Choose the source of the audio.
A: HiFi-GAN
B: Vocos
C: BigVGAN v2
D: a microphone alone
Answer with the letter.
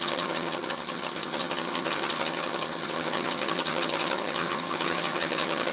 A